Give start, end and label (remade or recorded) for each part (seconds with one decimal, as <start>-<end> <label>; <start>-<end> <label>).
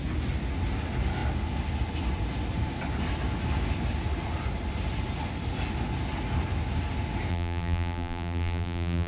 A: 0.0-7.3 recorded; 7.3-9.1 remade